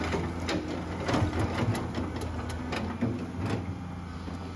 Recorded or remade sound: recorded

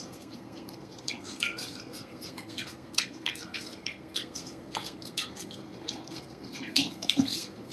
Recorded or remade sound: remade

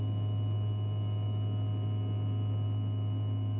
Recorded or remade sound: recorded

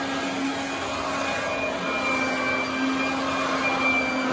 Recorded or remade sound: recorded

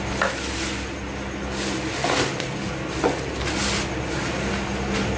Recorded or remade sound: recorded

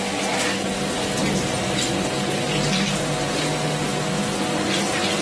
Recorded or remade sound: recorded